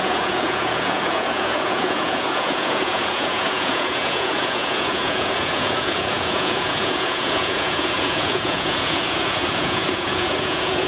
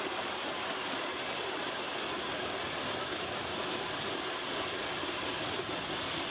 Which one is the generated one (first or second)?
first